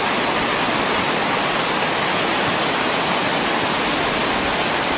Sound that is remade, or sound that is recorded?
recorded